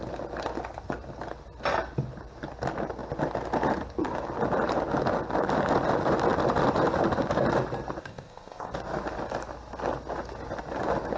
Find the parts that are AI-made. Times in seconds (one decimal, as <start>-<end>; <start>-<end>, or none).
8.0-8.7